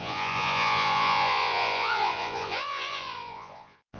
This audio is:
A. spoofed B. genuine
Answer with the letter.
A